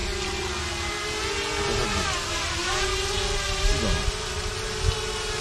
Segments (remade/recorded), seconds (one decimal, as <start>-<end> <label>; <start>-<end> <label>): 0.0-5.4 recorded